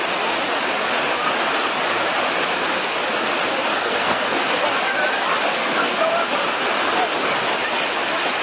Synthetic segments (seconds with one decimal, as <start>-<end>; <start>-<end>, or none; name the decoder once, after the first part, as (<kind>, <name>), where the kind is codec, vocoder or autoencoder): 3.7-4.4 (codec, SNAC); 5.5-6.1

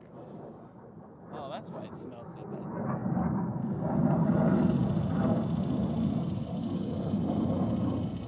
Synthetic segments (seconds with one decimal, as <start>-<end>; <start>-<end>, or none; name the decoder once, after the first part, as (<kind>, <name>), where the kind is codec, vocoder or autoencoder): none

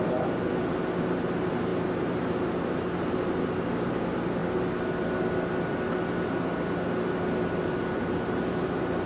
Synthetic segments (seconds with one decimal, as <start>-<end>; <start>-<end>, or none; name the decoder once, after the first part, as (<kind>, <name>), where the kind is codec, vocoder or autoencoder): none

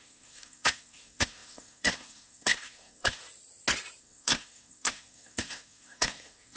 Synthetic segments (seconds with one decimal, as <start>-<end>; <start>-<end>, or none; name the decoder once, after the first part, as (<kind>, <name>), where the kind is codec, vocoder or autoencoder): 0.0-3.2 (codec, SNAC); 4.0-6.6

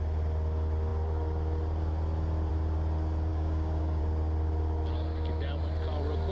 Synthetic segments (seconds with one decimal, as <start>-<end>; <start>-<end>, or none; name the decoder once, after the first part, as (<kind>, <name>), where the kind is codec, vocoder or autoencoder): 3.3-4.0 (codec, DAC)

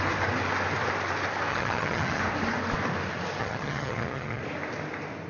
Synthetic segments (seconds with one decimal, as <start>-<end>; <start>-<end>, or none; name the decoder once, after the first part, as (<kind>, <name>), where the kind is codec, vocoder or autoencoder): 1.5-2.2 (vocoder, HiFi-GAN); 3.4-4.4